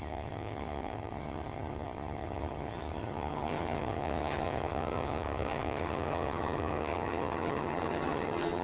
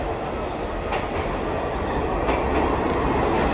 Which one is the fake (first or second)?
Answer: first